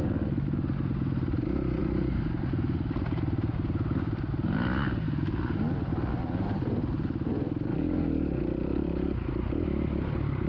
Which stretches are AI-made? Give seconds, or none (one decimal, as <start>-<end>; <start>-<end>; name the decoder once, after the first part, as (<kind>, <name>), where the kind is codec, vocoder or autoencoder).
none